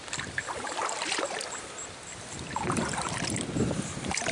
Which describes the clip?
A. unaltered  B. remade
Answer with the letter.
B